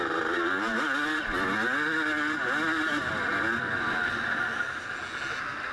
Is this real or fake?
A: real